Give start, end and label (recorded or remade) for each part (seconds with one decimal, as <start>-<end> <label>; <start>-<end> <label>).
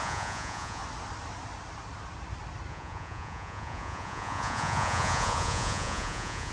0.0-0.8 remade; 0.8-2.7 recorded; 2.7-6.5 remade